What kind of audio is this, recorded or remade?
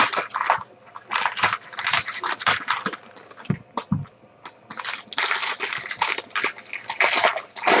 recorded